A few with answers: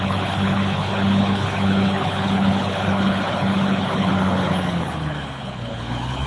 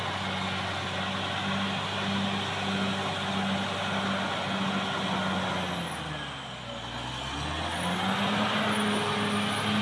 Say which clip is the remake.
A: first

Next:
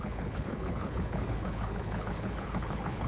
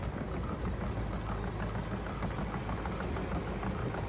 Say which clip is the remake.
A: first